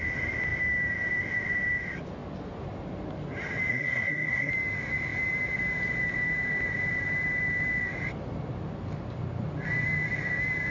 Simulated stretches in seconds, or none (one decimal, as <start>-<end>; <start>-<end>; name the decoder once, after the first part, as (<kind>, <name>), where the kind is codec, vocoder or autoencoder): 3.7-4.5 (codec, SNAC)